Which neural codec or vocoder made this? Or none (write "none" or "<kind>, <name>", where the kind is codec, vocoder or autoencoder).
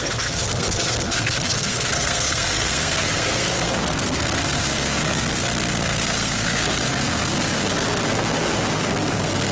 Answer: codec, SNAC